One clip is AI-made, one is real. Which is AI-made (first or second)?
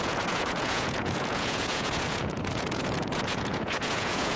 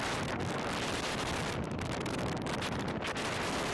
first